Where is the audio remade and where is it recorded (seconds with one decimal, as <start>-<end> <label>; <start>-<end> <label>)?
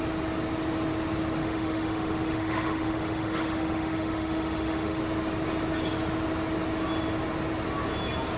0.0-1.4 recorded; 1.4-5.0 remade; 5.0-8.4 recorded